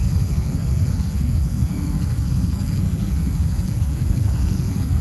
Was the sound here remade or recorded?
remade